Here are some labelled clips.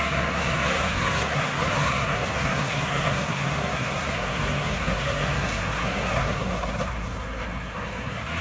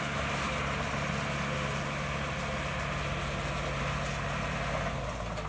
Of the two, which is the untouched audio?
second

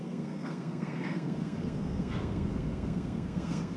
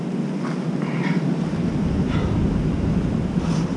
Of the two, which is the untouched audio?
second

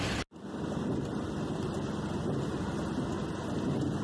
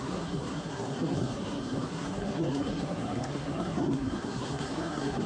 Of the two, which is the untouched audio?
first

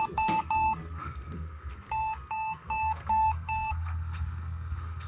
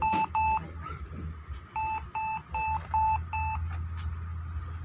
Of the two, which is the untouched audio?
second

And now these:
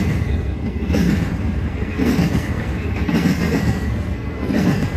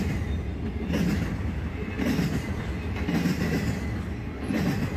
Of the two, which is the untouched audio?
second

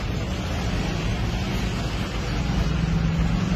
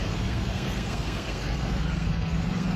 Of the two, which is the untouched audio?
first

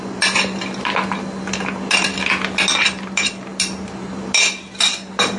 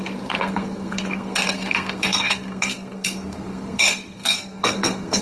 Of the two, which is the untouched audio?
first